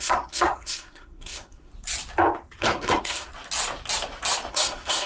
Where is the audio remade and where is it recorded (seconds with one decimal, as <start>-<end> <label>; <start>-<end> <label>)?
0.0-1.7 remade; 1.7-2.6 recorded; 2.6-3.3 remade; 3.3-4.5 recorded; 4.5-5.1 remade